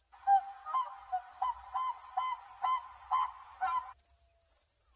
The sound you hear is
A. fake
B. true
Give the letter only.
B